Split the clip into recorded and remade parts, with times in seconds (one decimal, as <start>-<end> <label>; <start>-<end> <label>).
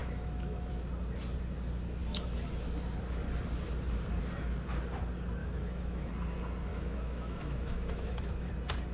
0.0-0.7 remade; 0.7-5.4 recorded; 5.4-6.1 remade; 6.1-6.7 recorded; 6.7-8.5 remade; 8.5-8.9 recorded